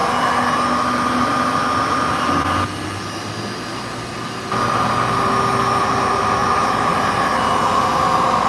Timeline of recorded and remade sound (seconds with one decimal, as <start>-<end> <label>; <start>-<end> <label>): 0.0-8.5 recorded

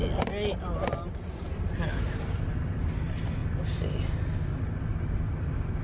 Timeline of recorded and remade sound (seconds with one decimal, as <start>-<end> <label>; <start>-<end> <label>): 0.0-5.8 recorded

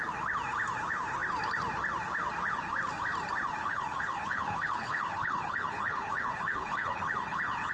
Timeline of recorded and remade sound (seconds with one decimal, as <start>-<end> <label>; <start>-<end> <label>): 0.0-3.6 recorded; 3.6-7.7 remade